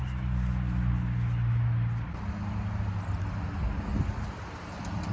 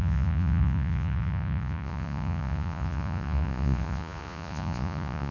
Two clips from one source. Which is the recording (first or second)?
first